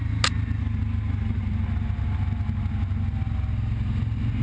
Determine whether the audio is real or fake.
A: real